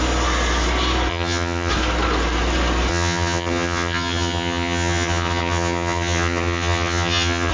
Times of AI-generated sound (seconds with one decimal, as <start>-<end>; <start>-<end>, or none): 1.1-1.7; 2.9-7.5